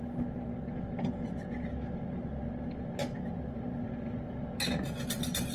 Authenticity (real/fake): real